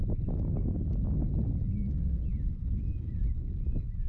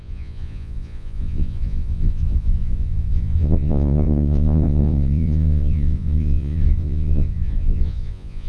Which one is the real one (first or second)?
first